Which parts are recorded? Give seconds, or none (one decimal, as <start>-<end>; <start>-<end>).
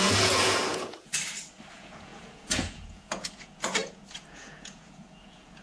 1.1-1.7